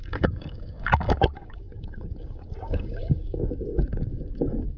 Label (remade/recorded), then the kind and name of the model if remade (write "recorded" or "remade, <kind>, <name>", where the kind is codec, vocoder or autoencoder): remade, codec, DAC